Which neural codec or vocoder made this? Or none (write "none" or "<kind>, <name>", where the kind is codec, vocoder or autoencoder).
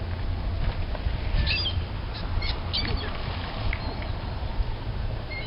none